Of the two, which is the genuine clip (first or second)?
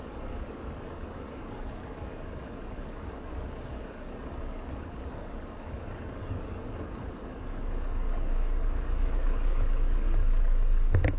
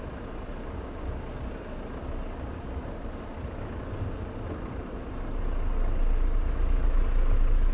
second